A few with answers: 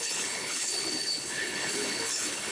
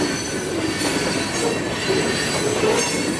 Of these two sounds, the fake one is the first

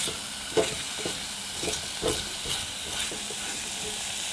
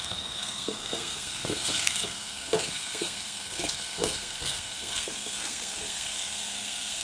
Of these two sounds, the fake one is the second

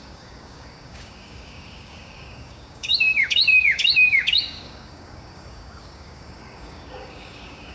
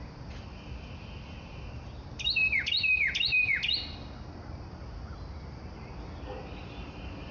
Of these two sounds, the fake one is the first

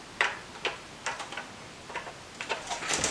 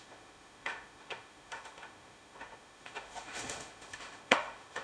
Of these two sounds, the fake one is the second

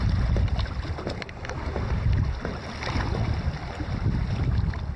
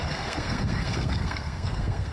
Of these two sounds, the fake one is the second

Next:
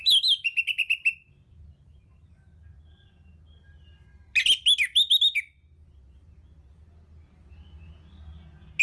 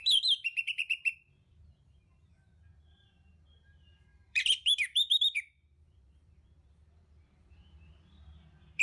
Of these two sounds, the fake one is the second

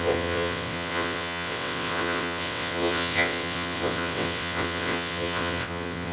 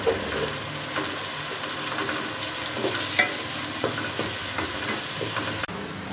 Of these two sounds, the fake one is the first